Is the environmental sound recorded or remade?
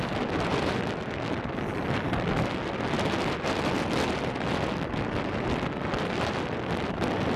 recorded